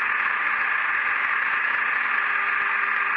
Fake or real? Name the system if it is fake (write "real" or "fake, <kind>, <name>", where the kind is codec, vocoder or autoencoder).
real